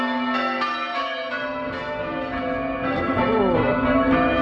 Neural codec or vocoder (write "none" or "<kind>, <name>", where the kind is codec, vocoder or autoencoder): none